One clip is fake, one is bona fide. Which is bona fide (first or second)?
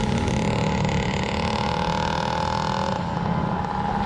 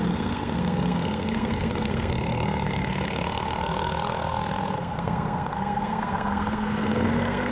first